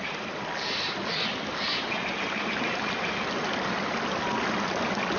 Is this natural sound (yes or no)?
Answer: yes